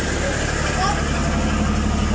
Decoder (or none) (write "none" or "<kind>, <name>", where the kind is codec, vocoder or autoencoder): none